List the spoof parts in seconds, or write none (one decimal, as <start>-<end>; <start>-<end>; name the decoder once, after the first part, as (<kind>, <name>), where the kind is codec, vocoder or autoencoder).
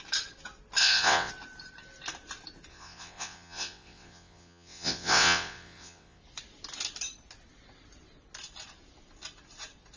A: 0.8-1.3 (vocoder, WaveNeXt); 2.7-6.2